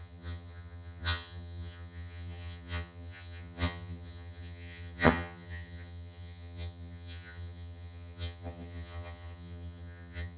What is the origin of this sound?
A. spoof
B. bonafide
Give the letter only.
A